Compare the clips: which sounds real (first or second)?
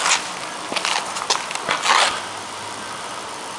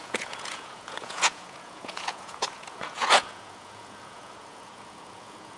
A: first